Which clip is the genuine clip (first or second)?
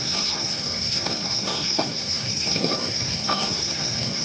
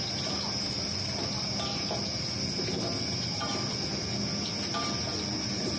second